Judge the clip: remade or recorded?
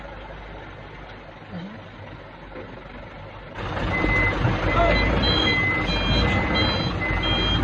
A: recorded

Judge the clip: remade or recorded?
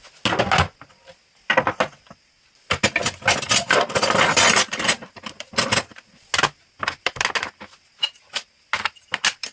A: recorded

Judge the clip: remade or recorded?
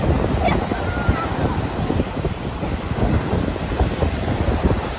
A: recorded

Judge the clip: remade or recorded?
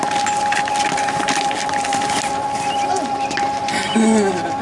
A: recorded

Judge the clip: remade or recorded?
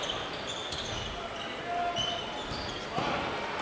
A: recorded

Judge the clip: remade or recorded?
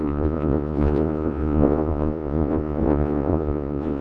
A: remade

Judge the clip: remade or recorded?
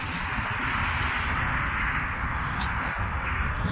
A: recorded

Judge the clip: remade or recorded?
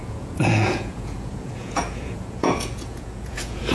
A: remade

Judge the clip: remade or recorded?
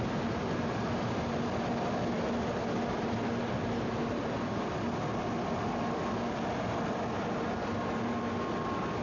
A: recorded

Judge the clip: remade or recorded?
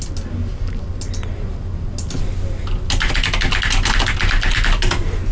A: recorded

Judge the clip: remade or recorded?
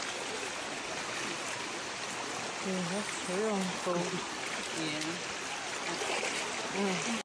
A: recorded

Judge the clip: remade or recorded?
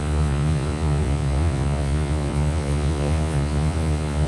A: remade